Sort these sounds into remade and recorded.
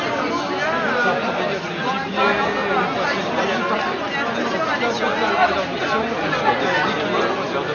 recorded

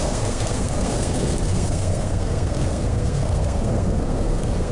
remade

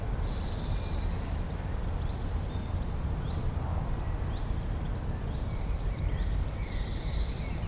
recorded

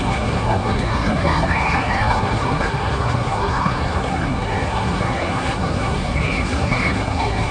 remade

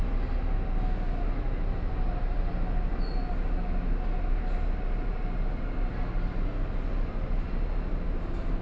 recorded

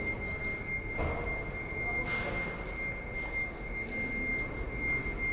recorded